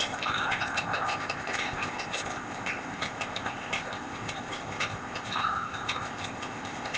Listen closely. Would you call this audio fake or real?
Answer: fake